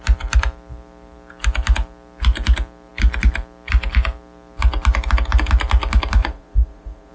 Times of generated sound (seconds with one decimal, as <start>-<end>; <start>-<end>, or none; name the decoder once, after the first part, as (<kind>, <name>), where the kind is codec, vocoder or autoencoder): 6.2-7.1 (vocoder, Vocos)